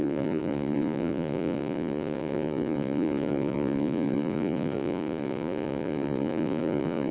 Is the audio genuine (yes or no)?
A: no